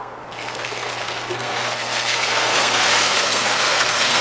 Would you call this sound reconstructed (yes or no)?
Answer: yes